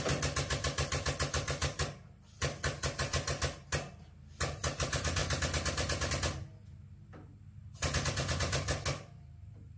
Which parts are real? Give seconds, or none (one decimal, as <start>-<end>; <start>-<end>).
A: 0.0-9.8